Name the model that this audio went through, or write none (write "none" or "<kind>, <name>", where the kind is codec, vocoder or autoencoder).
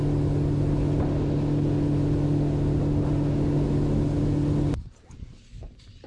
none